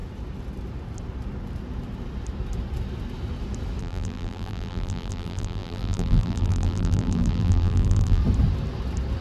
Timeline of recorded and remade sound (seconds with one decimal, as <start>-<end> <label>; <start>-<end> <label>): 0.0-3.8 recorded; 3.8-8.2 remade; 8.2-9.2 recorded